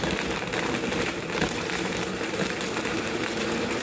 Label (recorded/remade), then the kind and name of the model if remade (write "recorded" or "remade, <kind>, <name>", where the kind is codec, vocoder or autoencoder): remade, vocoder, BigVGAN v2